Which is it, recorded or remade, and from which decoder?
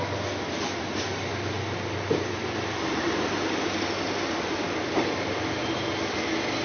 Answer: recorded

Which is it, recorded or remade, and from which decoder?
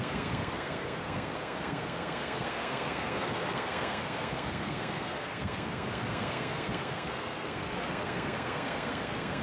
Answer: remade, codec, SNAC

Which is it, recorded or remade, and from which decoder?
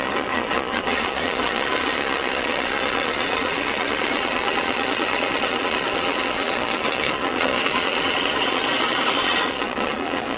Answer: remade, vocoder, Vocos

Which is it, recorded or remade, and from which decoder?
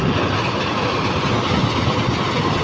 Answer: recorded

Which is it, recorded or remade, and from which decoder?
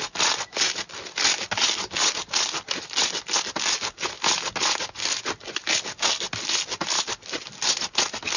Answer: recorded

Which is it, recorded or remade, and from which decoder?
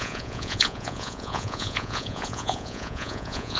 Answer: remade, vocoder, Vocos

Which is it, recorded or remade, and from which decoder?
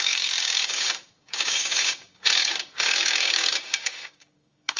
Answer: remade, codec, DAC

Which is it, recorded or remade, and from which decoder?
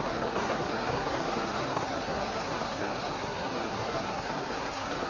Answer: remade, codec, SNAC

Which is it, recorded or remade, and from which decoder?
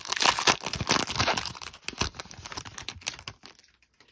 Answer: recorded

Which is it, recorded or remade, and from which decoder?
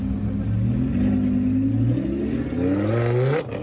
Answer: recorded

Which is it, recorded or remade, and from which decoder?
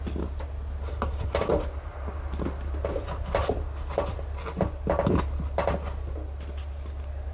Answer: recorded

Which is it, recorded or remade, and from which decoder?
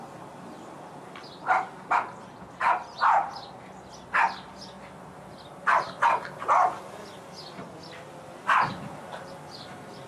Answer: recorded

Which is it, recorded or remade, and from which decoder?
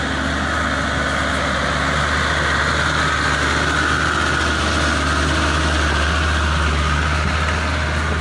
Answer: recorded